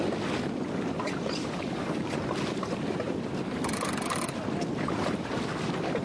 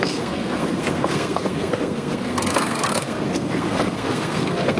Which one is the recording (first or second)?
first